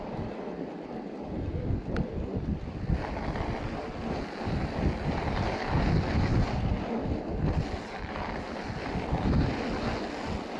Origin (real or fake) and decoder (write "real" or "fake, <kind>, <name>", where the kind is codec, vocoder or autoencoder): real